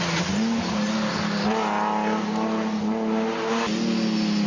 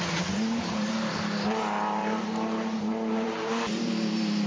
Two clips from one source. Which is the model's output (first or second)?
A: second